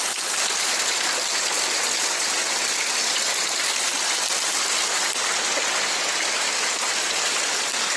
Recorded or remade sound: recorded